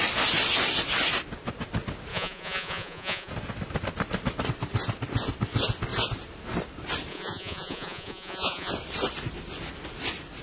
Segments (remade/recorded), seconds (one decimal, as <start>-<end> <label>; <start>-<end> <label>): 0.0-2.1 recorded; 2.1-3.3 remade; 3.3-7.1 recorded; 7.1-8.7 remade; 8.7-10.4 recorded